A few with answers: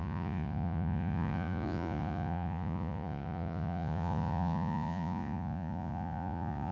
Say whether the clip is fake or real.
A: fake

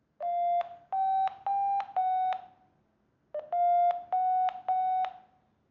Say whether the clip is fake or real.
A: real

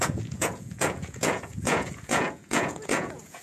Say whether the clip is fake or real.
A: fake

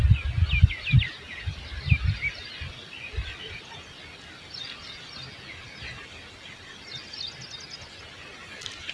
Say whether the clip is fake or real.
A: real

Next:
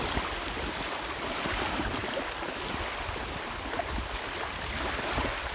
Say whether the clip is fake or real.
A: real